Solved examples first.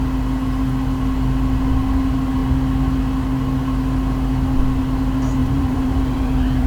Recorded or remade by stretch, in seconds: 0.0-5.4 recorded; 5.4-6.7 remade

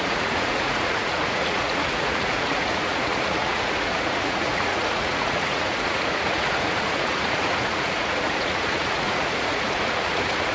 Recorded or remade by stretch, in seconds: 0.0-10.5 remade